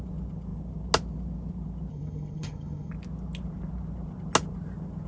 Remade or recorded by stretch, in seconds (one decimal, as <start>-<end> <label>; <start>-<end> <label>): 0.0-1.9 recorded; 1.9-2.9 remade; 2.9-5.1 recorded